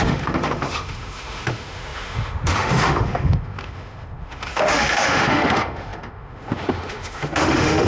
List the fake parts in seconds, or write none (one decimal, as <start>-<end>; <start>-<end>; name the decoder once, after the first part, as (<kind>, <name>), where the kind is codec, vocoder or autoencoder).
0.0-7.9 (autoencoder, DAC-VAE)